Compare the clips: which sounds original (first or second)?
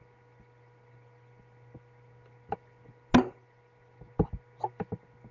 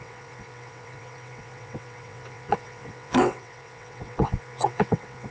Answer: first